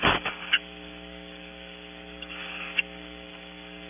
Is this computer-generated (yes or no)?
yes